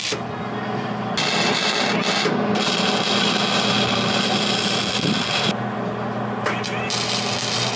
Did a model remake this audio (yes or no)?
no